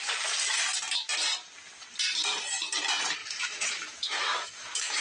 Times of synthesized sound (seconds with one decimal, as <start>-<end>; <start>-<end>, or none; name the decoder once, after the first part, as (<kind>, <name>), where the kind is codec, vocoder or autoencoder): 3.2-5.0 (autoencoder, DAC-VAE)